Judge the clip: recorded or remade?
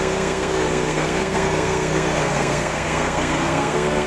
remade